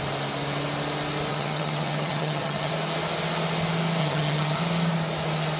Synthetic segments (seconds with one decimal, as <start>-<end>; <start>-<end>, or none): 1.3-2.7; 4.0-4.6

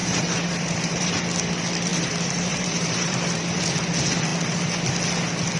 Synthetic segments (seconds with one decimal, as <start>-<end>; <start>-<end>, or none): 0.0-1.1; 1.9-3.6

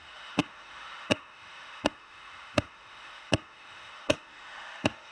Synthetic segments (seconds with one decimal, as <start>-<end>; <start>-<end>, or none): 0.0-5.1

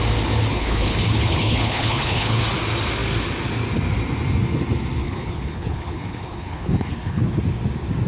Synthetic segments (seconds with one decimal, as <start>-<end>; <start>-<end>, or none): 0.5-2.4; 5.0-7.4

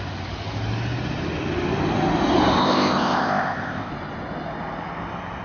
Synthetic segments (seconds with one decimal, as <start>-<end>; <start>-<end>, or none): 2.6-3.9

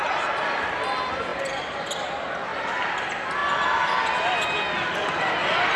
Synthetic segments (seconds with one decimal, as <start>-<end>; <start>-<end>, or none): 2.5-3.0

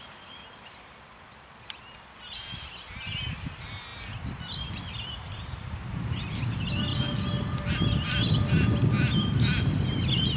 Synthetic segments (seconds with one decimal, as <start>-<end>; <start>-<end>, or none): 0.0-6.9; 7.7-10.4

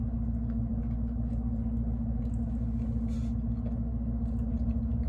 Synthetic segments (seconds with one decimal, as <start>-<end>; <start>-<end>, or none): none